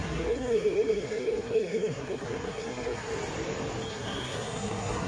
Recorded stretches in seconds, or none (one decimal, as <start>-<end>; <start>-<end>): 3.1-3.9